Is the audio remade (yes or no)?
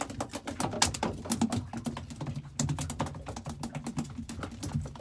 no